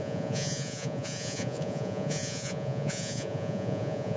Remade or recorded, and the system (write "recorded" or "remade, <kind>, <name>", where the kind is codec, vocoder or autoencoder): remade, vocoder, Vocos